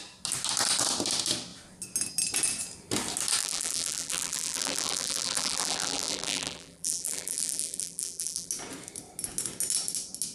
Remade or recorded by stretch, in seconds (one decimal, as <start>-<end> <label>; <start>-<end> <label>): 0.0-3.4 recorded; 3.4-8.5 remade; 8.5-10.3 recorded